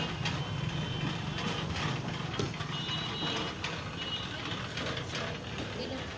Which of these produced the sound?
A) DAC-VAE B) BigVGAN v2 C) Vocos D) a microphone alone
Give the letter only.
D